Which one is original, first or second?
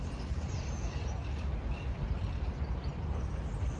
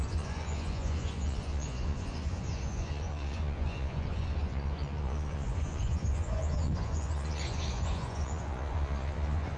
first